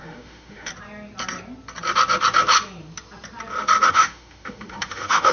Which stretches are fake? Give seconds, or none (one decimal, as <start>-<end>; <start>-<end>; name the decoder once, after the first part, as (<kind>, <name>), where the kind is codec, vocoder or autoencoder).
0.0-0.7 (autoencoder, DAC-VAE); 3.9-5.3